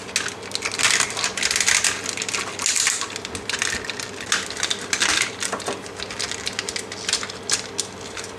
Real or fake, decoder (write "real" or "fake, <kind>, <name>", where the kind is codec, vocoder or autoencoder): real